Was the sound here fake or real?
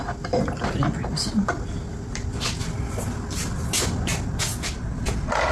real